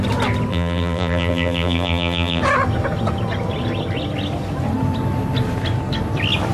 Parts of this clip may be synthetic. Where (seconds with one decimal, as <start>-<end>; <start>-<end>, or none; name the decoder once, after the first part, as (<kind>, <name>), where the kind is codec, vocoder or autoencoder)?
0.5-2.4 (vocoder, BigVGAN v2)

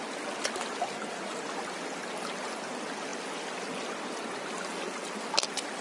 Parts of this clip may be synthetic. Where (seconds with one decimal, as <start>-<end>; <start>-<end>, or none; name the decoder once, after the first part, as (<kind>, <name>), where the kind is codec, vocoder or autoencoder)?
none

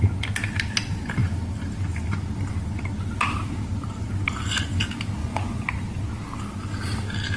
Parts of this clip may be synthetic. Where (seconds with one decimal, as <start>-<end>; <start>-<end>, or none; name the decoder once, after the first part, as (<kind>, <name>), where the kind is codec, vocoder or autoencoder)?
5.2-5.7 (vocoder, Vocos)

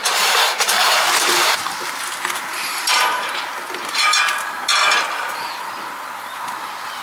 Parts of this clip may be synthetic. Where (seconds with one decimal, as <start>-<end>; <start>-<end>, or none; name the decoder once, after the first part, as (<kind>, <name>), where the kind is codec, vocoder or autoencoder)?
0.0-3.3 (vocoder, BigVGAN v2)

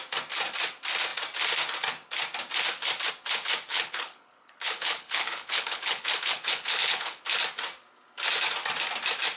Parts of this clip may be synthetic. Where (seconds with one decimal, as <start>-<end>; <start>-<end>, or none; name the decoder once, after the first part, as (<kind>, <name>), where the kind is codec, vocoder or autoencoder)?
3.7-7.2 (codec, HILCodec)